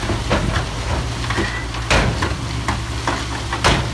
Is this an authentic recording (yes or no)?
yes